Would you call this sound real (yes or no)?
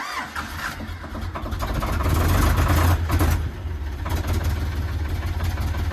yes